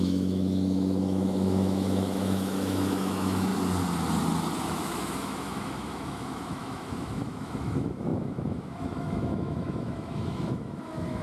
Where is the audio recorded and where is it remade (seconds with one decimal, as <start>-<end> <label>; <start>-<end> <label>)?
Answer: 0.0-3.5 remade; 3.5-4.7 recorded; 4.7-11.2 remade